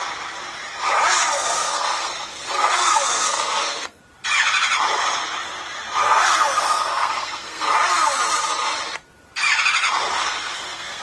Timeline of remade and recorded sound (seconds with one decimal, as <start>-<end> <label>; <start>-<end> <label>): 0.0-1.2 recorded; 1.2-4.0 remade; 4.0-6.0 recorded; 6.0-7.7 remade; 7.7-10.1 recorded; 10.1-11.0 remade